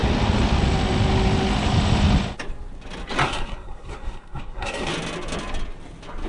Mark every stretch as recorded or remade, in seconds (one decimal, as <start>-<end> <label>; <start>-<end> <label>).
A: 0.0-3.2 recorded; 3.2-4.9 remade; 4.9-6.3 recorded